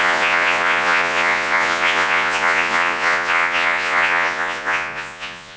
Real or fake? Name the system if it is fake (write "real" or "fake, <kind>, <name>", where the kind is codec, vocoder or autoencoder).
fake, vocoder, Vocos